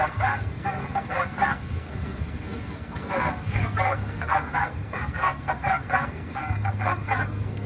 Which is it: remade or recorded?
remade